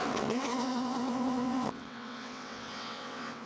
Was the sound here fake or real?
fake